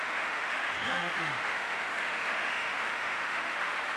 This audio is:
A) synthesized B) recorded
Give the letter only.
A